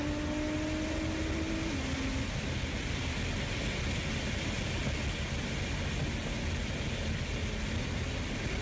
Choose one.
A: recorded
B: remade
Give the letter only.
A